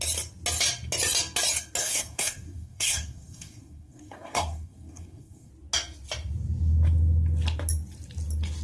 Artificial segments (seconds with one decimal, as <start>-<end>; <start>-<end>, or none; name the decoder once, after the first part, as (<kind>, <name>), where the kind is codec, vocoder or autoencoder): 1.8-5.5 (codec, SNAC)